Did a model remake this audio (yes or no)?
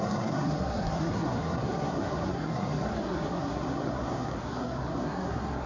yes